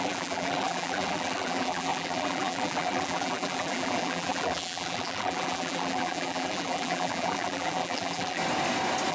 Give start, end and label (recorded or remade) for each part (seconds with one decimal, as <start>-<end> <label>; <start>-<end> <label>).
0.0-8.4 remade; 8.4-9.1 recorded